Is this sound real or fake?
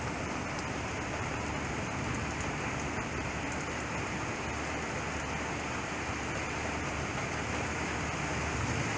real